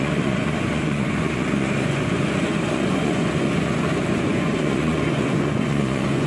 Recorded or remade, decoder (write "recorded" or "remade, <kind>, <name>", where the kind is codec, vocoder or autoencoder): remade, vocoder, Vocos